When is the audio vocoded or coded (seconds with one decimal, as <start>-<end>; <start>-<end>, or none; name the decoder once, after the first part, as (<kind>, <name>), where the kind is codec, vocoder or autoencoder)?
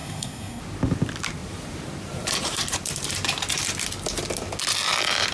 0.0-0.6 (codec, SNAC)